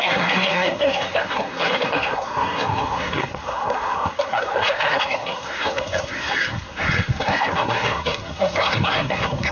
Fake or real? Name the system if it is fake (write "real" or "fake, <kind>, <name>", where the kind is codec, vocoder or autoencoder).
fake, codec, SNAC